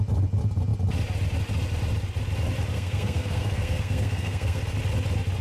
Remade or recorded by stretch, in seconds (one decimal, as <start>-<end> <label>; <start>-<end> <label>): 0.0-2.7 recorded; 2.7-4.6 remade; 4.6-5.4 recorded